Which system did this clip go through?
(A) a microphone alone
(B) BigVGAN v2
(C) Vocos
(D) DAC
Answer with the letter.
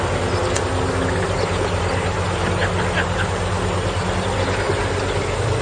A